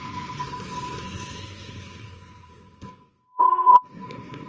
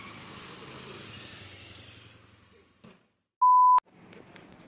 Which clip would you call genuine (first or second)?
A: second